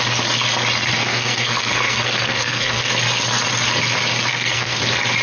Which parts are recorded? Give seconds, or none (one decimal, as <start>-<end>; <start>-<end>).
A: 0.0-1.0; 2.9-4.3; 4.8-5.2